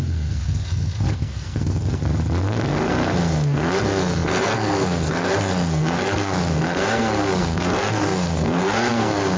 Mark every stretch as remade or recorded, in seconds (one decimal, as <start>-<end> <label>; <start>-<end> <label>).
0.0-2.1 remade; 2.1-2.9 recorded; 2.9-9.4 remade

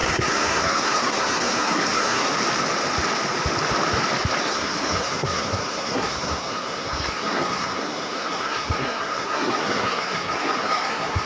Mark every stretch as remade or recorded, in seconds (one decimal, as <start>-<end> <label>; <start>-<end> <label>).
0.0-2.3 remade; 2.3-4.4 recorded; 4.4-11.3 remade

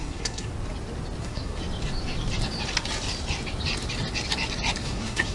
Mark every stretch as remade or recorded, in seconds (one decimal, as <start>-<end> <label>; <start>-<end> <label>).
0.0-0.5 remade; 0.5-1.2 recorded; 1.2-1.6 remade; 1.6-4.8 recorded; 4.8-5.3 remade

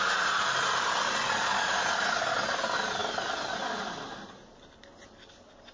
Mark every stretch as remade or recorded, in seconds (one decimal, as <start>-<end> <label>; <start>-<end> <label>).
0.0-5.7 recorded

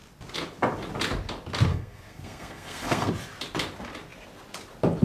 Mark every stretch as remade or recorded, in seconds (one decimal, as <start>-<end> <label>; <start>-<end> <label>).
0.0-1.7 recorded; 1.7-3.1 remade; 3.1-5.0 recorded

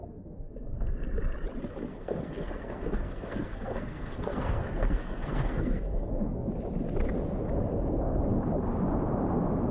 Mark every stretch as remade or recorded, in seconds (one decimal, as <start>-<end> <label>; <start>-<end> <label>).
0.0-1.0 remade; 1.0-1.9 recorded; 1.9-6.5 remade; 6.5-9.7 recorded

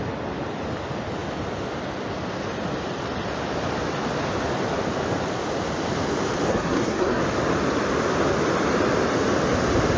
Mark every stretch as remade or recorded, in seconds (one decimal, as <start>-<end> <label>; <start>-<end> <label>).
0.0-6.5 recorded; 6.5-7.2 remade; 7.2-10.0 recorded